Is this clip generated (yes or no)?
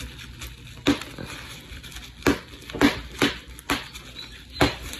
no